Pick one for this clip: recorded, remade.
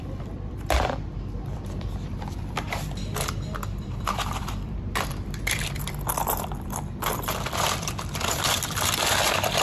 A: remade